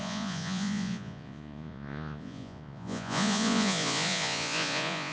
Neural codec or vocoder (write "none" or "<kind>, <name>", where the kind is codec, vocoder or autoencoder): vocoder, Vocos